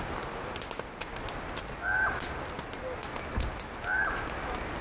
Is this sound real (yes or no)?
yes